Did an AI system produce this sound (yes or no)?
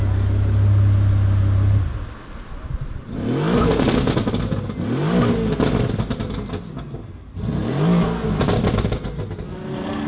no